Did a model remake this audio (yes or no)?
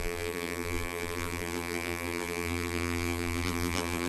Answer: yes